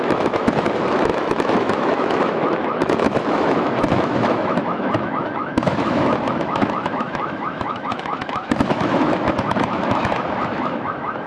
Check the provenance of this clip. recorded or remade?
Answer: remade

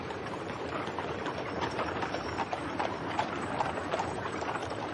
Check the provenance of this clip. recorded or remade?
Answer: remade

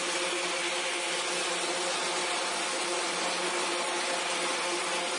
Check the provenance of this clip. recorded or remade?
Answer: recorded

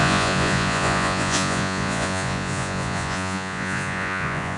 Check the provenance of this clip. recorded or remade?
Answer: remade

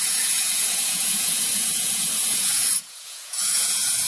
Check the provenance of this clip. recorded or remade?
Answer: remade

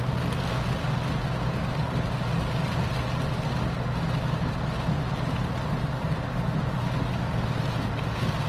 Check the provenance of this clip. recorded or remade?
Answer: recorded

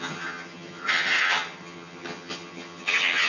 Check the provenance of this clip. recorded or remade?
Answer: remade